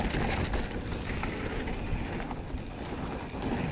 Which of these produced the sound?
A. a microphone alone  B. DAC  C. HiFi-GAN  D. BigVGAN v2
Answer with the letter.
A